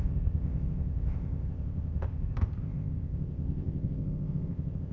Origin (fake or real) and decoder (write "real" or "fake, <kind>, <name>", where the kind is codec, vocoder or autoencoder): fake, codec, ZipCodec